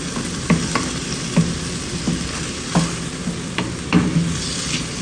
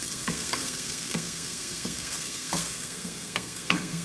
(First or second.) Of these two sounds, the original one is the first